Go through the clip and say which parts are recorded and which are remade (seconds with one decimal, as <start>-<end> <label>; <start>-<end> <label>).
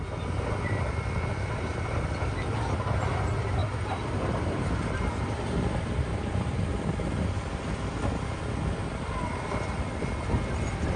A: 0.0-3.6 remade; 3.6-4.5 recorded; 4.5-11.0 remade